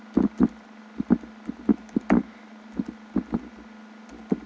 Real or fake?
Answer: real